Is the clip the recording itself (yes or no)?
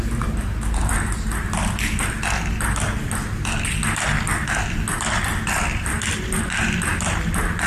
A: yes